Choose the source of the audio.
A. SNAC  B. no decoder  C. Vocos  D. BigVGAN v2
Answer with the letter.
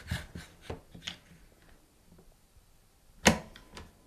B